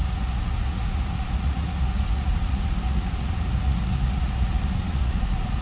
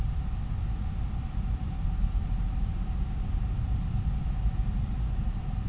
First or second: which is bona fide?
second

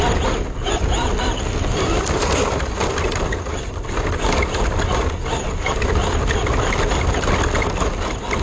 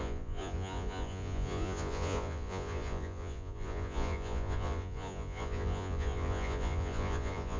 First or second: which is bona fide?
first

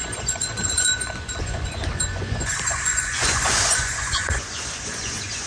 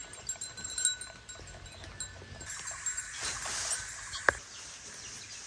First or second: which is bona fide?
second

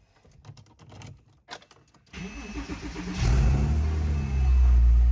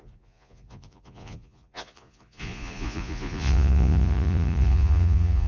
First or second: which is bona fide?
first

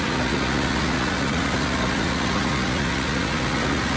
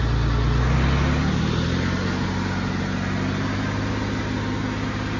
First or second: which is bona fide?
second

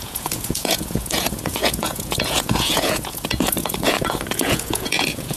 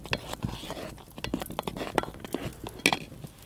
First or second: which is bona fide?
second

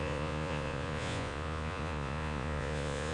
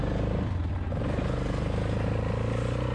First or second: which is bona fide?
second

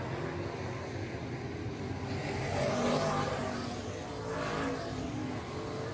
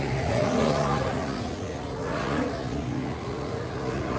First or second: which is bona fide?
first